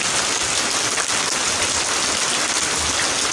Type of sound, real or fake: real